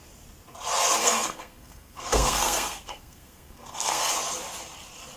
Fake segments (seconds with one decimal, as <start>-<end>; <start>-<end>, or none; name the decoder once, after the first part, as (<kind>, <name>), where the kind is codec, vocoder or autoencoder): 1.0-4.1 (codec, SNAC)